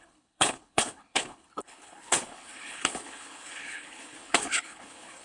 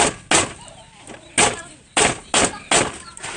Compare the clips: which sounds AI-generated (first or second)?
first